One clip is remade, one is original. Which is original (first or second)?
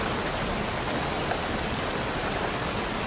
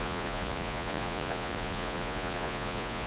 first